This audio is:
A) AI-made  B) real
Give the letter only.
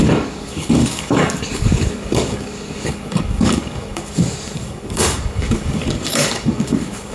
A